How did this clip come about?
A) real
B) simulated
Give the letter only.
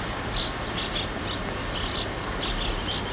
A